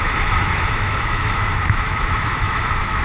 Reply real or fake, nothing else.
fake